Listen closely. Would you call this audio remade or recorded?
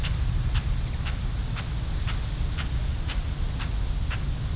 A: recorded